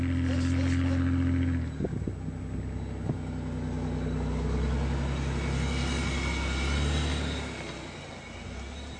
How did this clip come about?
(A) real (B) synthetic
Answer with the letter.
A